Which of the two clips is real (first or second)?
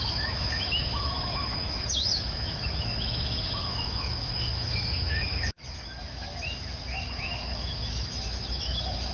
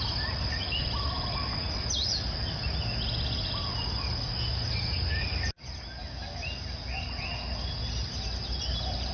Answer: second